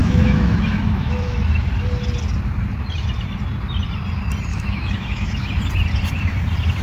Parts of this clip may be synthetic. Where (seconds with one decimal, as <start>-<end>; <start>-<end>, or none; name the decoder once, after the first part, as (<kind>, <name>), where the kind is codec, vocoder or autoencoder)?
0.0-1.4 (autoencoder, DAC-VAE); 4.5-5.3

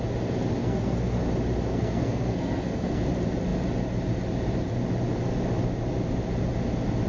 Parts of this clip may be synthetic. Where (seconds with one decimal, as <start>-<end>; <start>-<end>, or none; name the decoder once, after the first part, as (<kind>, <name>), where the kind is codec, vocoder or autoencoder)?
0.6-1.2 (codec, SNAC); 1.7-3.0

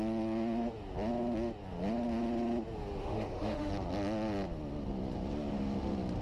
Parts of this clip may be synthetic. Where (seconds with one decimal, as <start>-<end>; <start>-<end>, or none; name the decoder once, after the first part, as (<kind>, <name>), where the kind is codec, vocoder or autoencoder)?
3.0-3.7 (autoencoder, DAC-VAE)